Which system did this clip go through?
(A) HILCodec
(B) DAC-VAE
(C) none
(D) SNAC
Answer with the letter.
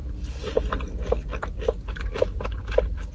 C